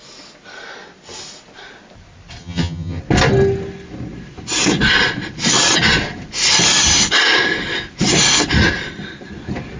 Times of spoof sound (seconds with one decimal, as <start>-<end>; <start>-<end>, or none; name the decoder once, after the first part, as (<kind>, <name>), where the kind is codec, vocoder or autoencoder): 2.4-3.0 (vocoder, HiFi-GAN)